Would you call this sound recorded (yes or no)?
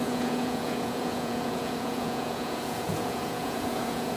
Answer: no